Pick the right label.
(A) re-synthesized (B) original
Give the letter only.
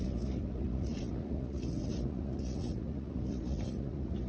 A